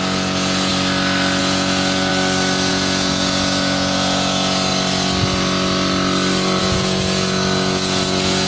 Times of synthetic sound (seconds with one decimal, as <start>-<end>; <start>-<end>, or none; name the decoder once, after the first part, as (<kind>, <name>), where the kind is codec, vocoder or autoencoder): 0.0-0.7 (vocoder, Vocos); 1.4-2.1; 2.7-4.7; 6.6-8.5